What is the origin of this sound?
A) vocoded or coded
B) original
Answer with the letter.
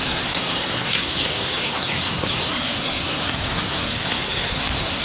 A